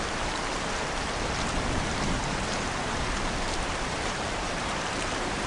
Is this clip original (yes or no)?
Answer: no